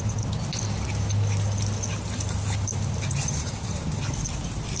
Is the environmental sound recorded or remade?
recorded